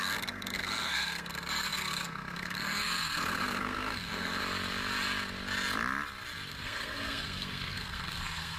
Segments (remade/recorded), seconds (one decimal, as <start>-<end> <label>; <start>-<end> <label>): 0.0-4.4 remade; 4.4-6.5 recorded; 6.5-8.6 remade